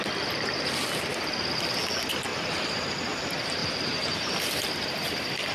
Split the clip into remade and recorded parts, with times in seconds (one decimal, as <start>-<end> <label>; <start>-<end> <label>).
0.0-3.6 recorded; 3.6-4.4 remade; 4.4-5.5 recorded